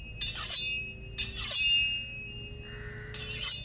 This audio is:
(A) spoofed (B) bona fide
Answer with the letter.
B